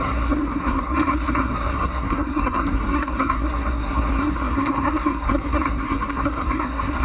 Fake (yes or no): yes